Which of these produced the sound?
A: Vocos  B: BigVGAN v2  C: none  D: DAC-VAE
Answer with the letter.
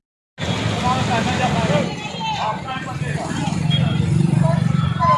C